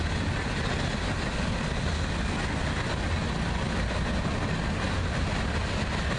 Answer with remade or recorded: recorded